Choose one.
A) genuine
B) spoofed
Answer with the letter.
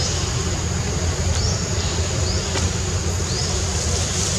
A